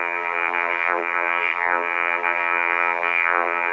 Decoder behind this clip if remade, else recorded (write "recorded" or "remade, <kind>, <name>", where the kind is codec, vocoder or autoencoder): remade, vocoder, BigVGAN v2